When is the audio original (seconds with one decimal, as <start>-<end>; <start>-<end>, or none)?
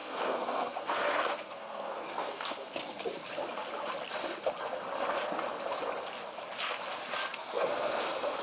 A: 2.8-7.2